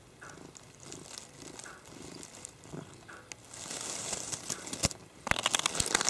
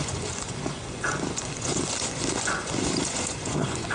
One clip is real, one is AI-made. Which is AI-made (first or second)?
second